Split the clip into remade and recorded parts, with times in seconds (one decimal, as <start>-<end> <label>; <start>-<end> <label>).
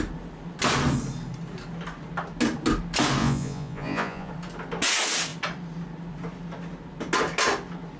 0.0-3.2 recorded; 3.2-4.3 remade; 4.3-8.0 recorded